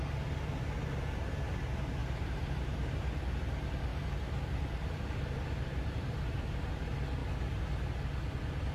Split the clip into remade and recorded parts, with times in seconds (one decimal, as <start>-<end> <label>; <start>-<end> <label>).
0.0-2.0 recorded; 2.0-2.9 remade; 2.9-3.9 recorded; 3.9-6.7 remade; 6.7-8.7 recorded